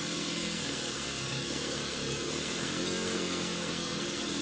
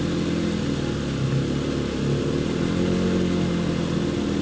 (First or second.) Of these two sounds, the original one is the second